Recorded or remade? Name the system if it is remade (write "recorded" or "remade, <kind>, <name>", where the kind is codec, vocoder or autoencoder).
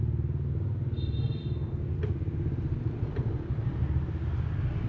recorded